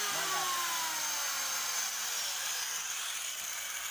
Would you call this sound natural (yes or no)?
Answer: yes